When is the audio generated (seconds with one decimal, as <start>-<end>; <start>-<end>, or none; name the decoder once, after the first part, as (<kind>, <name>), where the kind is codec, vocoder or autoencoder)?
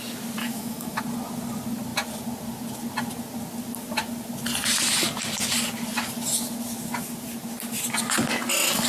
0.4-1.0 (autoencoder, DAC-VAE)